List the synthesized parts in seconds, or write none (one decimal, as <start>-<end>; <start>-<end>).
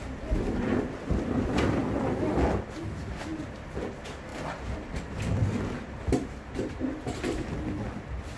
4.3-8.0